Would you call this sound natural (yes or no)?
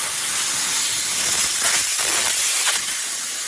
yes